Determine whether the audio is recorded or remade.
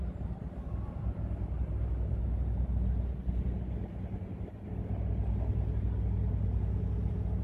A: recorded